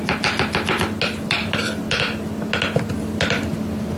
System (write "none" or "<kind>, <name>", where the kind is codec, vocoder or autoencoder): none